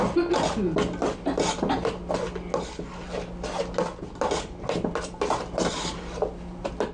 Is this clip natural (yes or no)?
yes